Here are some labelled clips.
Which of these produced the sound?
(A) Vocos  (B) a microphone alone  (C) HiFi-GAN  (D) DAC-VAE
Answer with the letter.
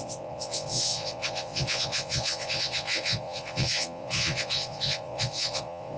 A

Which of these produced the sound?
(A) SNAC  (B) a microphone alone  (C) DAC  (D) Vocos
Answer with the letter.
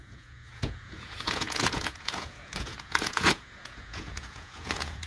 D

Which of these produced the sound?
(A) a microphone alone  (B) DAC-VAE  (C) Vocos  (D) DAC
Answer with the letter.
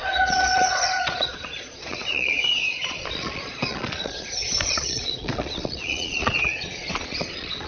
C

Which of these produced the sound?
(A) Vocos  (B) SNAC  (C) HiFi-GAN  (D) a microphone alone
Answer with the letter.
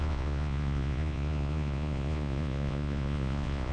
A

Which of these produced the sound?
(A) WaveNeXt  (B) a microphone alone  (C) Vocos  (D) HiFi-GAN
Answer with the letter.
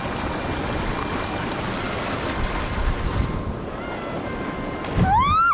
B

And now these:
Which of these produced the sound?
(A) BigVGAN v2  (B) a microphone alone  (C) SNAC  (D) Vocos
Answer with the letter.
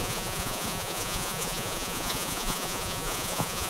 D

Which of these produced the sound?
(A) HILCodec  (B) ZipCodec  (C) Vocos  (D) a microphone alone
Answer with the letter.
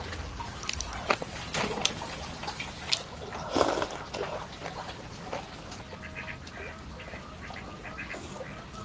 D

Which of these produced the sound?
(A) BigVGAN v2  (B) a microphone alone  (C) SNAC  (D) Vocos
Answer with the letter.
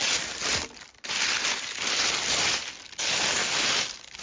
B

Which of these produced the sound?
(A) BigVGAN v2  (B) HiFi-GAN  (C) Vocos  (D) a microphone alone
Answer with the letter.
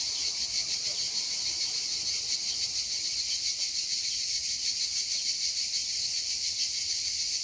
D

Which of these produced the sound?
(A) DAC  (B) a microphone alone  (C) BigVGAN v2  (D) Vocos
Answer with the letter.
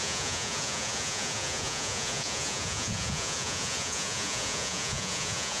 D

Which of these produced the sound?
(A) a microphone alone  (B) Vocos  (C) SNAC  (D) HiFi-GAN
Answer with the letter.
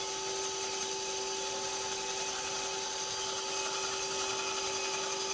A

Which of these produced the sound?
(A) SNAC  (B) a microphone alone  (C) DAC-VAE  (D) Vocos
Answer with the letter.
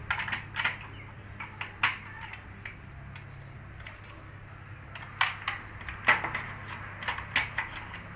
B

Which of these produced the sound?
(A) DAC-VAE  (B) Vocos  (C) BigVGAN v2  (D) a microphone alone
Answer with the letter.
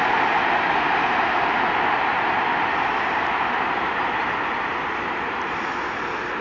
D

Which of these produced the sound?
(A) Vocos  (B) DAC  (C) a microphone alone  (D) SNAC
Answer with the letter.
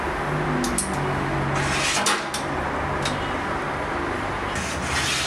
C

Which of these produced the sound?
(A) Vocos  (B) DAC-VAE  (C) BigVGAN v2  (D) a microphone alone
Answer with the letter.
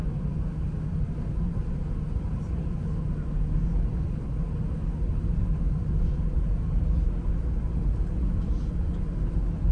D